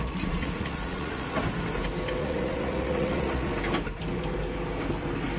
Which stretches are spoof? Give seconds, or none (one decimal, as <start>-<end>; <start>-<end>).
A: 0.0-1.4; 2.2-3.5